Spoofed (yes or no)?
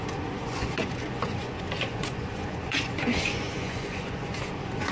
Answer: yes